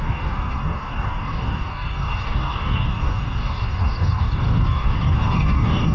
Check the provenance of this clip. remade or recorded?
remade